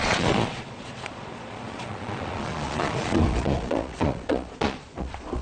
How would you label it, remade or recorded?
remade